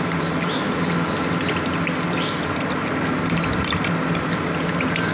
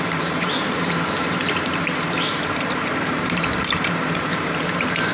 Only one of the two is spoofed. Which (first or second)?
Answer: second